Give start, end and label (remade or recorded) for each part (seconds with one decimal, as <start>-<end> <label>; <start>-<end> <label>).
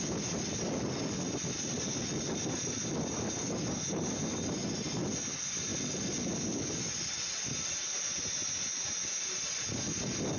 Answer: 0.0-10.4 recorded